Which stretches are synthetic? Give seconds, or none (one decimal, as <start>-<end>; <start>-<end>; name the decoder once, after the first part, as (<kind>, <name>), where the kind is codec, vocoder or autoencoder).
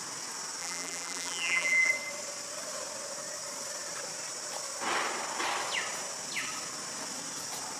0.6-1.9 (vocoder, BigVGAN v2)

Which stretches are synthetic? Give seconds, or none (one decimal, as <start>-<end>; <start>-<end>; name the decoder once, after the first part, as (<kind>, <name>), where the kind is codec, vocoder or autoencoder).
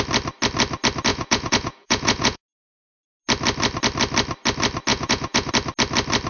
1.1-2.4 (vocoder, Vocos); 4.9-5.5